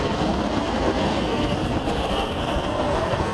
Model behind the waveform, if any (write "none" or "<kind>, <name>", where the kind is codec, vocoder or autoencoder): codec, SNAC